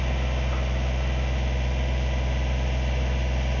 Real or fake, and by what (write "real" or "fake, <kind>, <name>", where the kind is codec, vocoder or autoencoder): real